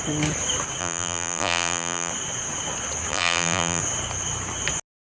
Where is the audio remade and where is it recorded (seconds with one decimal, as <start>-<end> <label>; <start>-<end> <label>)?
0.0-0.8 recorded; 0.8-2.1 remade; 2.1-3.1 recorded; 3.1-3.8 remade; 3.8-5.1 recorded